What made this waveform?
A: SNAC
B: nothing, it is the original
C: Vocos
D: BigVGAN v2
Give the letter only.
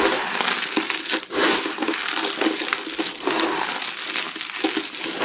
B